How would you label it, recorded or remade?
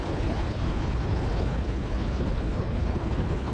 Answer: remade